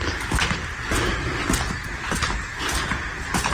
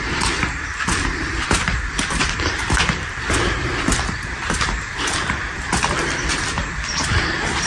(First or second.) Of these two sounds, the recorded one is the first